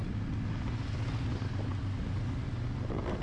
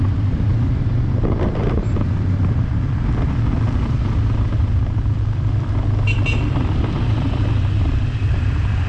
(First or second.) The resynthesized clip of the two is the second